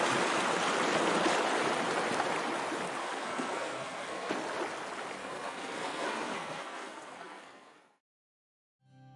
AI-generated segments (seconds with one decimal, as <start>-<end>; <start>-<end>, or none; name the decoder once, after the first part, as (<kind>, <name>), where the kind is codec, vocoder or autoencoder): 3.0-4.3 (codec, SNAC); 5.2-8.5

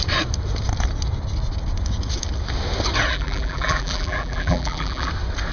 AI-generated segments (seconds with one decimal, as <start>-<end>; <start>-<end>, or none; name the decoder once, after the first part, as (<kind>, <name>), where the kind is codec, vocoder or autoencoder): 3.1-5.1 (vocoder, BigVGAN v2)

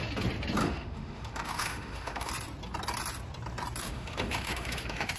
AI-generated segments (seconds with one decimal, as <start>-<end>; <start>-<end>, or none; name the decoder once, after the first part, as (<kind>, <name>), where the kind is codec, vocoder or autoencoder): 0.6-2.3 (autoencoder, DAC-VAE); 3.8-5.2

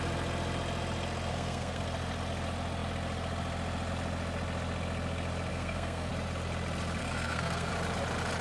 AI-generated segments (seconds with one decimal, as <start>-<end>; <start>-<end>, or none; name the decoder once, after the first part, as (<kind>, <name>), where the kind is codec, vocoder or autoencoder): 1.3-1.8 (codec, SNAC); 5.5-6.1; 7.0-7.7

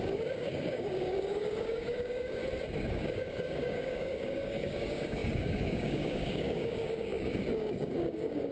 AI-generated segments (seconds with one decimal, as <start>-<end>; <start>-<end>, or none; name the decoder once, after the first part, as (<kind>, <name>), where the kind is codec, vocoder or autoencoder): 0.0-2.4 (codec, DAC); 2.9-8.5

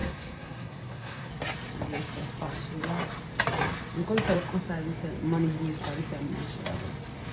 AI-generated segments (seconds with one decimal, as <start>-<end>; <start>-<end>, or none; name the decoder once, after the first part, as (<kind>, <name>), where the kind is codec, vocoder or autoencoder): 0.0-1.3 (codec, SNAC)